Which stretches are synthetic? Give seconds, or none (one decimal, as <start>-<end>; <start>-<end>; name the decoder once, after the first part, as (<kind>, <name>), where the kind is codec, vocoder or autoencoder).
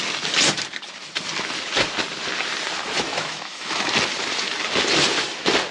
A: 3.1-3.9 (autoencoder, DAC-VAE)